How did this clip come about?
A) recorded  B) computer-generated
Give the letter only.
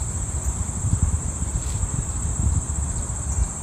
A